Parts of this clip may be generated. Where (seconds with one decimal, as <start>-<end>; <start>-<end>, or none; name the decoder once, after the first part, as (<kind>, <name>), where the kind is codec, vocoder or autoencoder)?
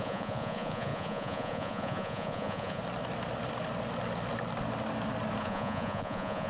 0.0-2.8 (vocoder, Vocos); 5.4-6.5